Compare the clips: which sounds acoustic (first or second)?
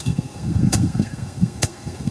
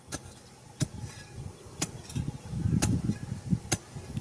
second